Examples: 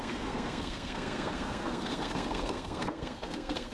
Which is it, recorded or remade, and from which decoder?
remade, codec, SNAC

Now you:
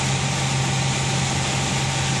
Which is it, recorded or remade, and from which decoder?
recorded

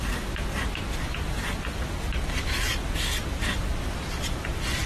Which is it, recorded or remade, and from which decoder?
recorded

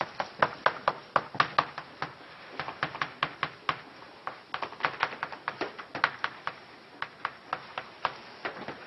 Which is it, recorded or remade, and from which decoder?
recorded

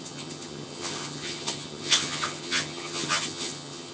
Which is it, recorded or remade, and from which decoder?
remade, vocoder, HiFi-GAN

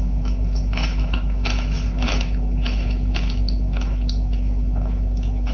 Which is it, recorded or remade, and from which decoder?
remade, autoencoder, DAC-VAE